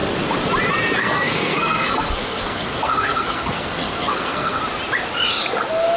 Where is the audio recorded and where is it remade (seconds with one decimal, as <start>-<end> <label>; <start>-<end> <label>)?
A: 0.0-1.0 recorded; 1.0-4.6 remade; 4.6-6.0 recorded